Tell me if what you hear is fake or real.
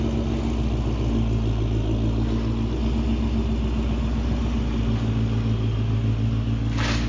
real